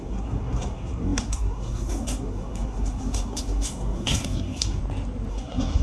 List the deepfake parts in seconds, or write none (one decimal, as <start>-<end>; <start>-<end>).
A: 0.0-4.8; 5.3-5.8